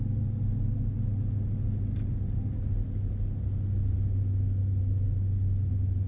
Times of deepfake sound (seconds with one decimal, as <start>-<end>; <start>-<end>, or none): none